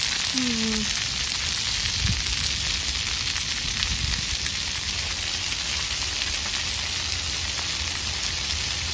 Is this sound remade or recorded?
recorded